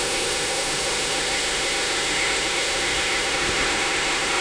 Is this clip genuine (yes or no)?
no